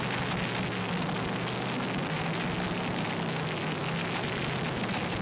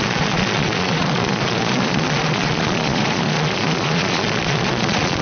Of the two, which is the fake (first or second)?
second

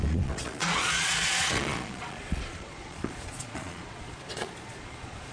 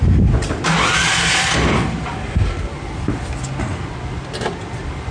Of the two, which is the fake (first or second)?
first